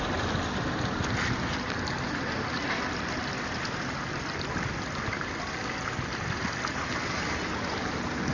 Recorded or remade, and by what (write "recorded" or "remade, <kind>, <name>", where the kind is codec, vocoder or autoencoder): recorded